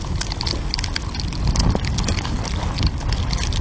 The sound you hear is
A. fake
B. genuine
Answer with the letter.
B